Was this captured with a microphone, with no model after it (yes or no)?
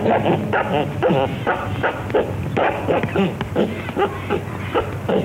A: yes